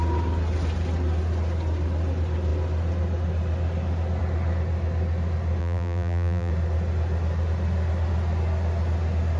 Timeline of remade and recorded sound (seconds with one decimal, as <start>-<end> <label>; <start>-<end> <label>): 0.0-5.6 recorded; 5.6-6.5 remade; 6.5-9.4 recorded